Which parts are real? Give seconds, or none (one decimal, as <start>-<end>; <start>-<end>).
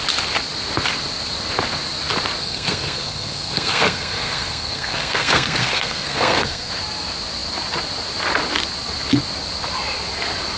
0.0-2.4; 6.7-10.6